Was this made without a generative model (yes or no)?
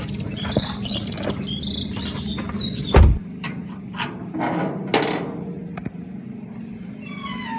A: yes